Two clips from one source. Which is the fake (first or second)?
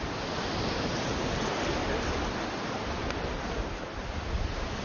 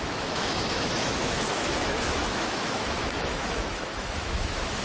second